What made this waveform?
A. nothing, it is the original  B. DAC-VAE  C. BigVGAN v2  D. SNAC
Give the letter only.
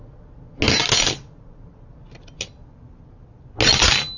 A